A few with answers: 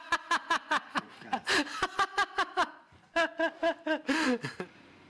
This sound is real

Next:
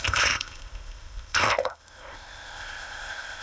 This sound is fake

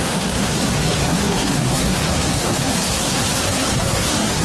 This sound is fake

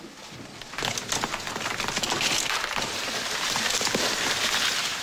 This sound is real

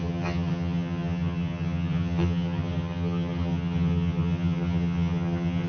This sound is fake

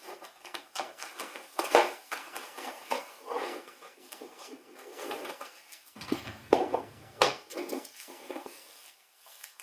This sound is fake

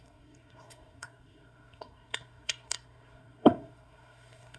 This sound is fake